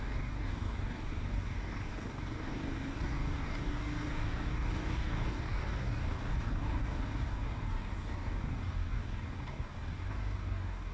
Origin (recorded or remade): remade